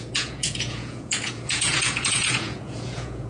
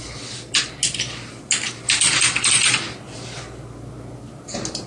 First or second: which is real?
second